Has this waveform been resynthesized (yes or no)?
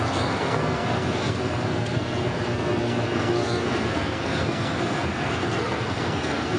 yes